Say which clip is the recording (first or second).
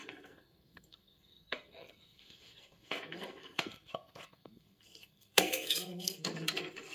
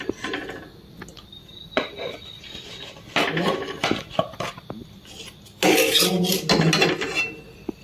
second